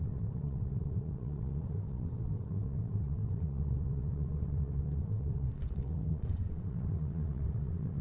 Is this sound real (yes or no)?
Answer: no